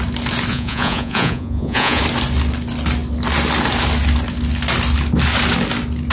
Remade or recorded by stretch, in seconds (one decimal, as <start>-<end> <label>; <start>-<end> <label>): 0.0-0.5 recorded; 0.5-2.0 remade; 2.0-6.1 recorded